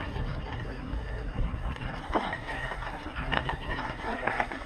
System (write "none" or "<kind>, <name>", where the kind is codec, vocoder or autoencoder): codec, SNAC